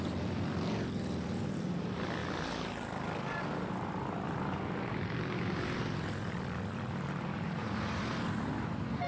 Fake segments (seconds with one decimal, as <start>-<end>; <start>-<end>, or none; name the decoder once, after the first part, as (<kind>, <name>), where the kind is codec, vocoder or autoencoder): 0.0-9.1 (vocoder, BigVGAN v2)